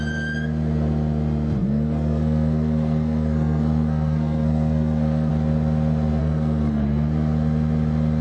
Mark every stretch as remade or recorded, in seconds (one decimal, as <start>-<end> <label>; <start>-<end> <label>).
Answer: 0.0-1.6 recorded; 1.6-5.3 remade; 5.3-6.2 recorded; 6.2-6.8 remade; 6.8-8.2 recorded